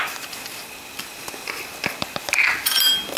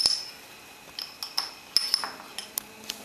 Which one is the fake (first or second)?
first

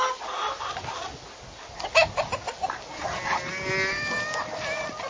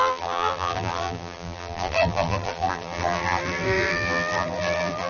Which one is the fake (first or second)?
second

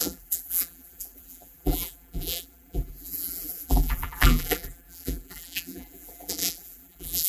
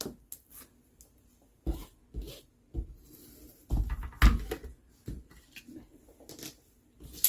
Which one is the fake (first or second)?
first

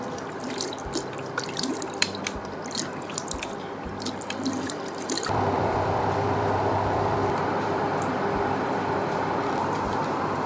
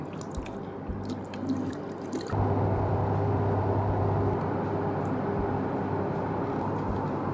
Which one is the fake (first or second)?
first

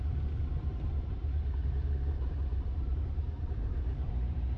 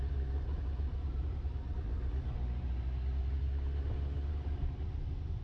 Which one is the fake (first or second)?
first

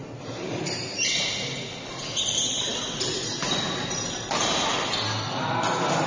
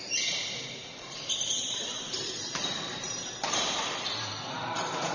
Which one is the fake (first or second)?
second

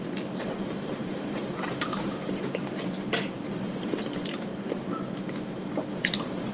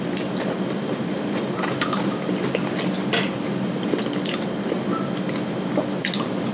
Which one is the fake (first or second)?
first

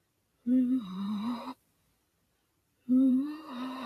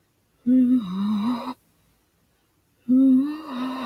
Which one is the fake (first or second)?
first